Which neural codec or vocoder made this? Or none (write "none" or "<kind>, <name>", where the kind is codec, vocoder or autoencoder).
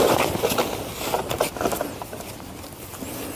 none